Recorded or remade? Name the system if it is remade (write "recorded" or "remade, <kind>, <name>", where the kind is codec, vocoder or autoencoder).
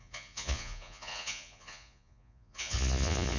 remade, vocoder, Vocos